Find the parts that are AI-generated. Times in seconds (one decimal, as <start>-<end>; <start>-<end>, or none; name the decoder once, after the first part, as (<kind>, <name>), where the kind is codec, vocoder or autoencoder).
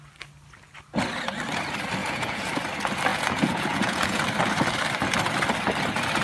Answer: 2.0-2.5 (vocoder, Vocos); 3.1-4.2